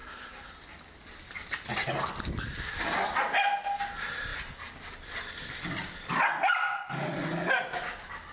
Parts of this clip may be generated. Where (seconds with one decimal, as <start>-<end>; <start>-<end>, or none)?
none

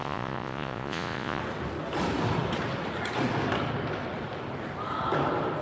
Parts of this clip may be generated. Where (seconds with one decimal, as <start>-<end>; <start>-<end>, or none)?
0.0-1.4

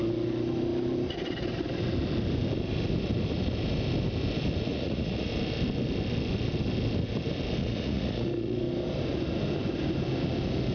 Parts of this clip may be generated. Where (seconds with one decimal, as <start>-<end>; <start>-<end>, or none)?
4.7-5.3; 7.6-8.6

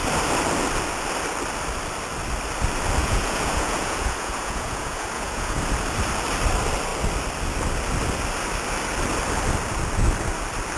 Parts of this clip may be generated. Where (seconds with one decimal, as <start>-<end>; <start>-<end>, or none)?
3.0-5.6

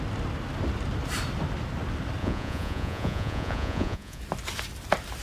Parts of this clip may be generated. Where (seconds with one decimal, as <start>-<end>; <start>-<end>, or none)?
2.2-4.2

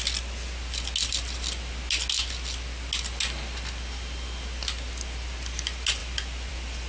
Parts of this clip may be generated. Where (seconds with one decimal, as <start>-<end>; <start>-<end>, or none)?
none